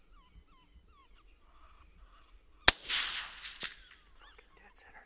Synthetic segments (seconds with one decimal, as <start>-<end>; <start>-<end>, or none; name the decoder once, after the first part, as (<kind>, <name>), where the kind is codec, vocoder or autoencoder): none